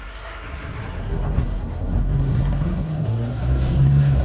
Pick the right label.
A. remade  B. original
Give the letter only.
A